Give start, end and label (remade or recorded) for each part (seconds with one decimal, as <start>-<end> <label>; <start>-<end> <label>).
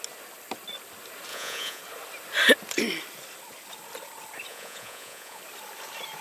0.0-1.3 recorded; 1.3-1.8 remade; 1.8-4.5 recorded; 4.5-5.4 remade; 5.4-6.2 recorded